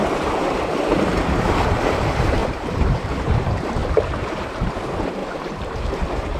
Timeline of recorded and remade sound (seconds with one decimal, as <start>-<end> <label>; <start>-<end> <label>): 0.0-5.2 remade; 5.2-5.7 recorded; 5.7-6.4 remade